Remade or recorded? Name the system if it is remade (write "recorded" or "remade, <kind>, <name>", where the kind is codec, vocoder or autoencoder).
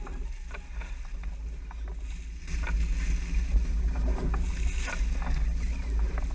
recorded